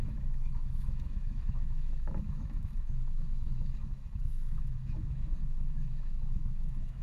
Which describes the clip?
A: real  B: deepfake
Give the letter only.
B